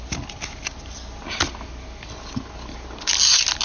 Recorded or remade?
recorded